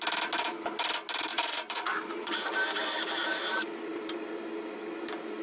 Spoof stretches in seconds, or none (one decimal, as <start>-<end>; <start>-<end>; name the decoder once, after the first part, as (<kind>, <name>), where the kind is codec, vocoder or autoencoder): 1.3-4.3 (vocoder, BigVGAN v2)